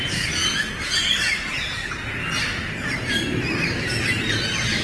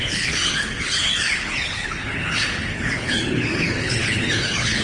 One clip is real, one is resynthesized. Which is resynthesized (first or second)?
second